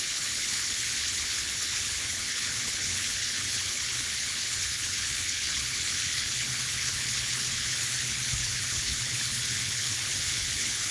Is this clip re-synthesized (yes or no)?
yes